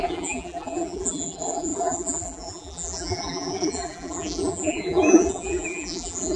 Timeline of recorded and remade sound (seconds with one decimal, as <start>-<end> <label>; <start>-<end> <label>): 0.0-6.4 remade

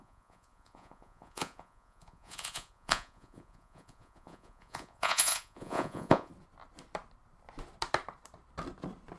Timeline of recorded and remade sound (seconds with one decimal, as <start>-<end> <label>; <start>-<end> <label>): 0.0-6.3 remade; 6.3-9.2 recorded

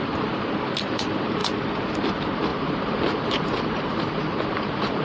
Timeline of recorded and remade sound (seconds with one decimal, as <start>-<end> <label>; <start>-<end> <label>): 0.0-1.4 remade; 1.4-2.1 recorded; 2.1-5.0 remade

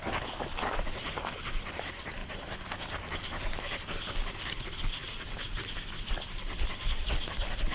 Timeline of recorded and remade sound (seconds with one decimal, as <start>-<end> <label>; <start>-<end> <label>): 0.0-7.7 recorded

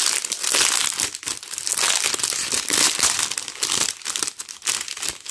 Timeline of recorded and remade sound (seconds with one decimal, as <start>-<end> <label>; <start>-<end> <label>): 0.0-5.3 recorded

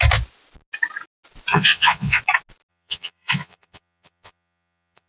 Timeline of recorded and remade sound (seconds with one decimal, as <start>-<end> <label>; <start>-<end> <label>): 0.0-1.5 recorded; 1.5-2.2 remade; 2.2-2.7 recorded; 2.7-5.1 remade